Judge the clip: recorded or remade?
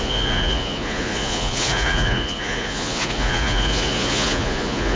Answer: remade